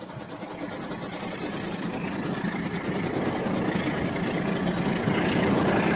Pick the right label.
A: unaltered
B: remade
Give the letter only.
A